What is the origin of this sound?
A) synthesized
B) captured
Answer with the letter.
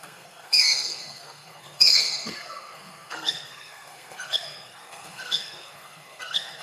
A